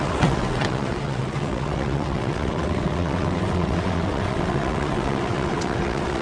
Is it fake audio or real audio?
fake